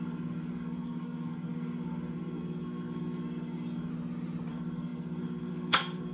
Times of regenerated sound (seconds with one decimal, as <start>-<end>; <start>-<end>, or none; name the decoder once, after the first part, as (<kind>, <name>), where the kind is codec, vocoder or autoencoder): 0.0-3.9 (codec, SNAC); 4.5-6.1